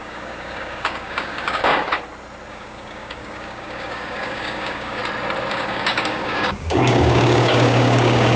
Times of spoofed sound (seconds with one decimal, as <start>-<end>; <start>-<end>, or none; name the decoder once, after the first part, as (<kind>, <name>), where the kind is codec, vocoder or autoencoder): 0.0-1.9 (codec, DAC); 2.5-5.0; 5.5-8.4